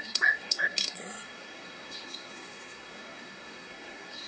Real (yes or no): no